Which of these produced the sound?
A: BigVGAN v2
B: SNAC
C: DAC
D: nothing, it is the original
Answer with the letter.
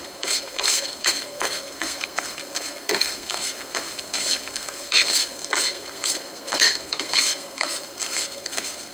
B